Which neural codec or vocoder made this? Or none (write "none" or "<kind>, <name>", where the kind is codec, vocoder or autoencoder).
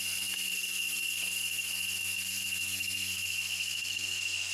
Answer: codec, SNAC